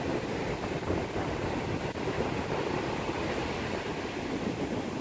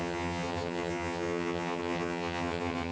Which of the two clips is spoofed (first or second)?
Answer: second